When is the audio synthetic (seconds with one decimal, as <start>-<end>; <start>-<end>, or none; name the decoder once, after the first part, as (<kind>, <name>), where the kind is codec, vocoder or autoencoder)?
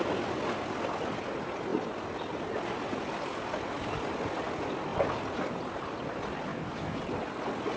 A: 6.5-7.0 (autoencoder, DAC-VAE)